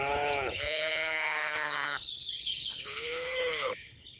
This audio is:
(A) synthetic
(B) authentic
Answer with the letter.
A